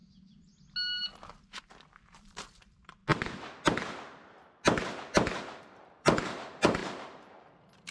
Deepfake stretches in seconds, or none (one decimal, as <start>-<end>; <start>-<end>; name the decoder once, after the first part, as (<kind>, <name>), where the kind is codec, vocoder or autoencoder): 2.2-3.0 (vocoder, BigVGAN v2); 5.6-7.9